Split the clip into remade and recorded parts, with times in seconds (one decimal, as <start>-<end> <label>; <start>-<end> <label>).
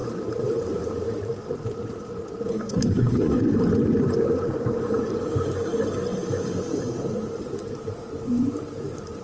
0.0-2.5 recorded; 2.5-3.4 remade; 3.4-9.2 recorded